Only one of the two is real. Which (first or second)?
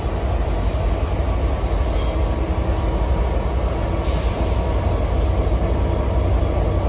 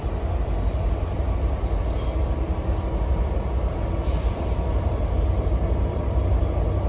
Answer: first